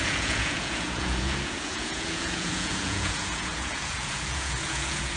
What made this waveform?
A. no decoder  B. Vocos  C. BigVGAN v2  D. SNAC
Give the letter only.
B